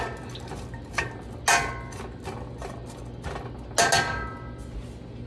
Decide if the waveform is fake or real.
real